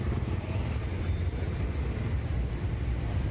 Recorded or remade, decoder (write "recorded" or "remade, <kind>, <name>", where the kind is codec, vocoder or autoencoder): recorded